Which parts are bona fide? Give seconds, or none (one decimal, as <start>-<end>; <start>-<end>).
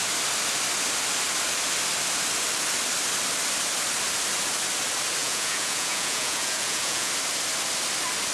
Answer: 0.0-5.2; 7.1-8.3